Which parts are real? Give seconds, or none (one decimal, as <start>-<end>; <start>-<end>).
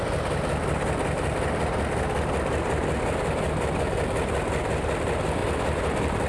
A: 0.0-6.3